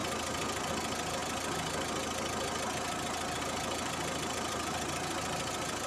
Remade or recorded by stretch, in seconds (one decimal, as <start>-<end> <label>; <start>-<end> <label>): 0.0-5.9 recorded